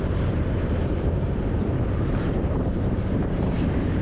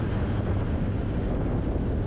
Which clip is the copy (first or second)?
first